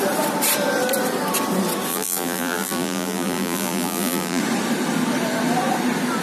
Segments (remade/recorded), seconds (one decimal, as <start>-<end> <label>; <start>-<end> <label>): 0.0-1.9 recorded; 1.9-4.4 remade; 4.4-6.2 recorded